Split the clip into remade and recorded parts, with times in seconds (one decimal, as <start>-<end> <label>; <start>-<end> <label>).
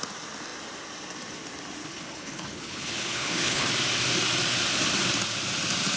0.0-1.8 recorded; 1.8-3.7 remade; 3.7-6.0 recorded